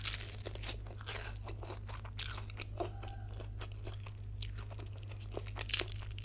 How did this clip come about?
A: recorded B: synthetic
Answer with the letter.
A